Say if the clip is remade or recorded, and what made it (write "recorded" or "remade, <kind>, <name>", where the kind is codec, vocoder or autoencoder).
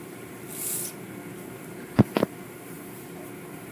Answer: recorded